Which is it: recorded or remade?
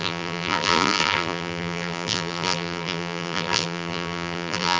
remade